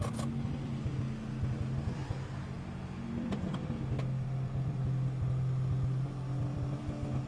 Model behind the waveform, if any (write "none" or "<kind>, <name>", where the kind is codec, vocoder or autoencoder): none